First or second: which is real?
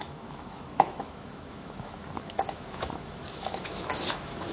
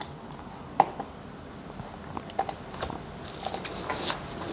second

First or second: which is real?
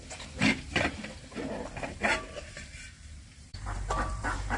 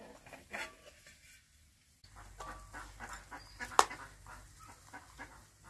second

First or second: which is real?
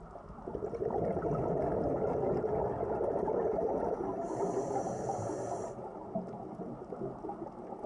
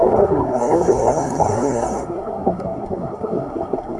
first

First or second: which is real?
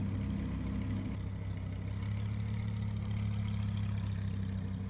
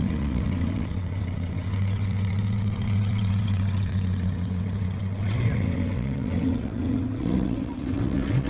first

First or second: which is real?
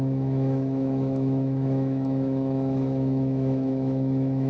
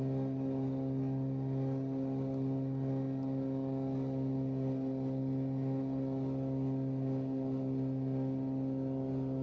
second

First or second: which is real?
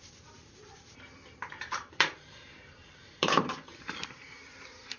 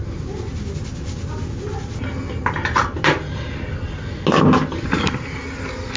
second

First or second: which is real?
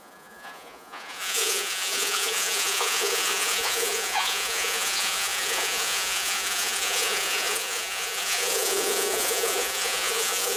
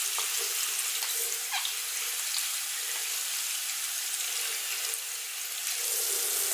second